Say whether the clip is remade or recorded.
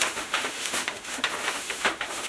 remade